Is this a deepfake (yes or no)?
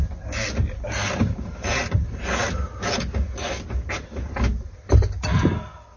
no